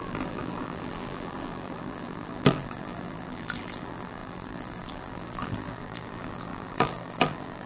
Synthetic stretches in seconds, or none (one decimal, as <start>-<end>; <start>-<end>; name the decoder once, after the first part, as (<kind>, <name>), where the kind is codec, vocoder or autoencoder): 0.0-7.7 (vocoder, BigVGAN v2)

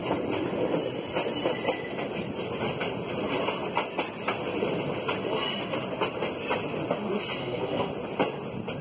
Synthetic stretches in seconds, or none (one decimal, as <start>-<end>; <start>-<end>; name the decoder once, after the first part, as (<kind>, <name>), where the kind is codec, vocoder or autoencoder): 7.4-7.9 (codec, SNAC)

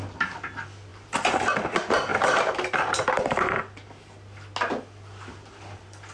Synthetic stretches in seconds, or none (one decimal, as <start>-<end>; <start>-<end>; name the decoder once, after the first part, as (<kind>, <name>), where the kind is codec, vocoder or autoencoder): 0.9-1.4 (vocoder, BigVGAN v2); 2.1-3.6

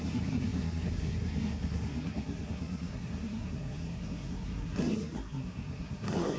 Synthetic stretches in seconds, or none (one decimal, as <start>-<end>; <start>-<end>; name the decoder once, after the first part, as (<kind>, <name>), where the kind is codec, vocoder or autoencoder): 0.0-6.4 (codec, SNAC)

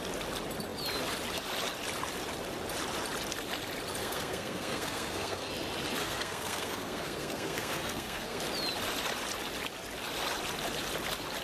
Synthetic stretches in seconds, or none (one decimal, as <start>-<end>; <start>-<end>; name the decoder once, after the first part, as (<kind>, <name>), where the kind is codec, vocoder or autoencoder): 4.0-5.5 (codec, SNAC); 6.0-8.4

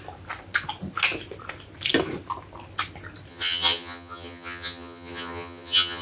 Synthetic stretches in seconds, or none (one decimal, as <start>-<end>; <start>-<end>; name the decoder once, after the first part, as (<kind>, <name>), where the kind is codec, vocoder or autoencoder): 3.3-6.0 (vocoder, HiFi-GAN)